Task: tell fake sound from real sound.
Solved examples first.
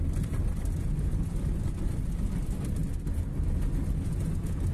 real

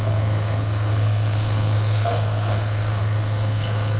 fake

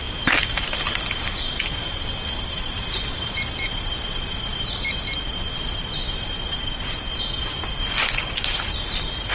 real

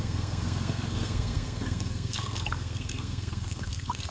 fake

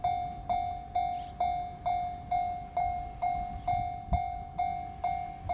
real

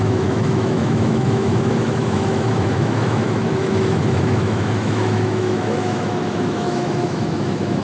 fake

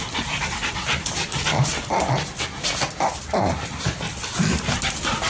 real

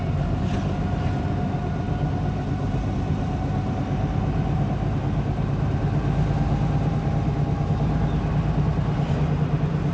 real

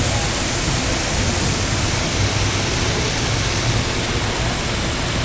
real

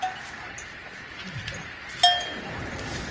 real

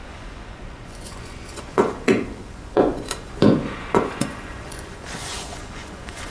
fake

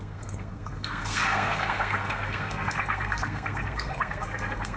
fake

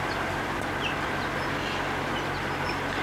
real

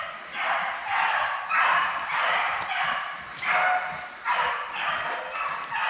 real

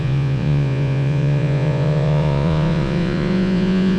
fake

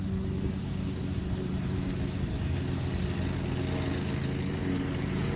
real